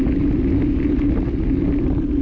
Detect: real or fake real